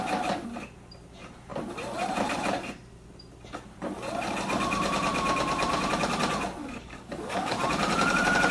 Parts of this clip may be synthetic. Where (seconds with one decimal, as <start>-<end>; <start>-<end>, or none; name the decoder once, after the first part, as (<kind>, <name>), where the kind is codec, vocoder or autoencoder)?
6.6-7.7 (codec, DAC)